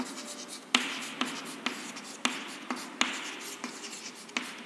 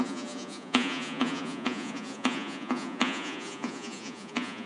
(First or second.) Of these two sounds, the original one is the first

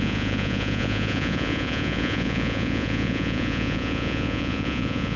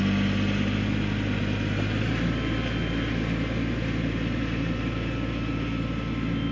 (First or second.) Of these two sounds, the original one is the second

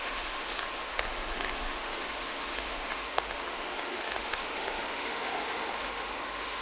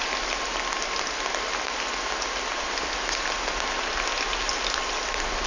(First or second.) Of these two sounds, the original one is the second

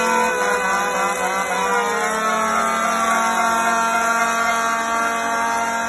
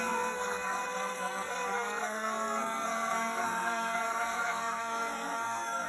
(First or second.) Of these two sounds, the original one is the first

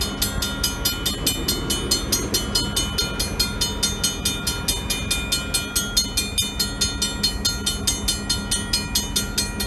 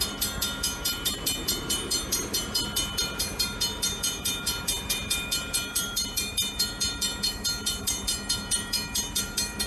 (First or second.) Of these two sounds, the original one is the first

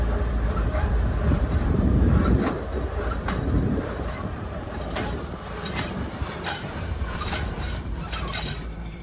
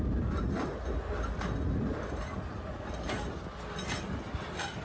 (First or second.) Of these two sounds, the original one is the second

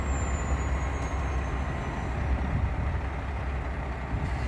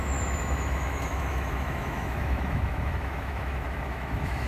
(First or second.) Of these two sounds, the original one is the first